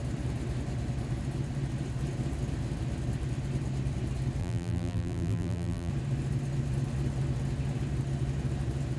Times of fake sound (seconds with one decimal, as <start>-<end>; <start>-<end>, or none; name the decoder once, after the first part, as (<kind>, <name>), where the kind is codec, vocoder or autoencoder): 4.4-5.9 (vocoder, BigVGAN v2)